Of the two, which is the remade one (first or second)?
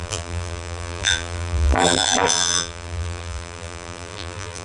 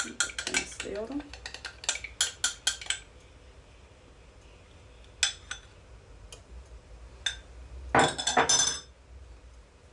first